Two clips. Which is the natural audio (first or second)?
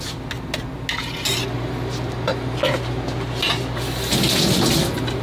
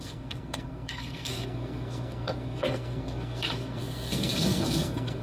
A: first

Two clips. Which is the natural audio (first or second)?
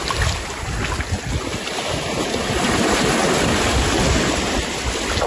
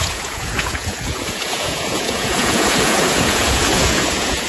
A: first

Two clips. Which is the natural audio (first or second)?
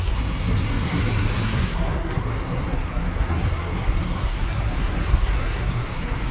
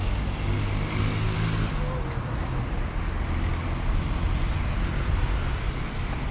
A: second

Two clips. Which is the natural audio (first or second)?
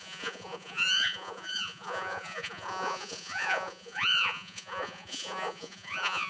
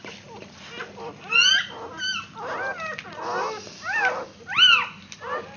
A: second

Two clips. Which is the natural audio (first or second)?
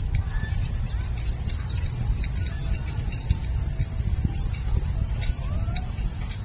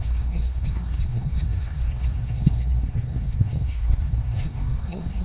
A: first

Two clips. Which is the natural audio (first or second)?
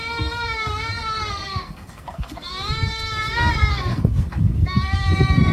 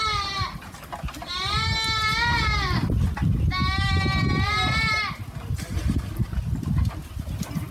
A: second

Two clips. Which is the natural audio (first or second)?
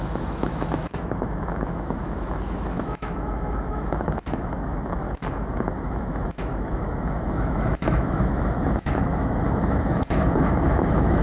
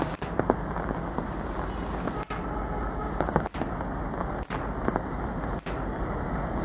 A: second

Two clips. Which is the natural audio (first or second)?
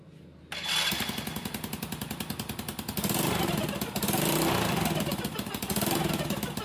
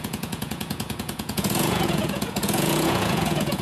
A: first